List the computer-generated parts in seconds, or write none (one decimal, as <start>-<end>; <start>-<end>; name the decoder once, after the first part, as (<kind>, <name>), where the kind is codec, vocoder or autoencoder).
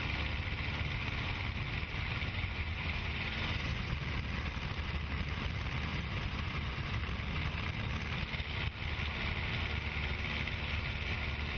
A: 2.3-4.0 (vocoder, Vocos); 5.9-7.0